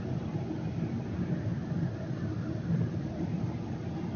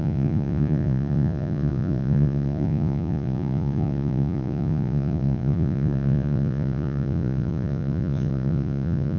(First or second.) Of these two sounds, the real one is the first